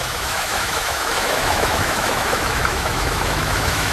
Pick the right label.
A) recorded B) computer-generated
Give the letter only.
B